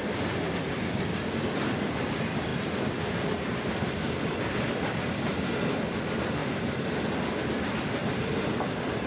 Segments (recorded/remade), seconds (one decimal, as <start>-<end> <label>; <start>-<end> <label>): 0.0-6.4 recorded; 6.4-6.9 remade; 6.9-9.1 recorded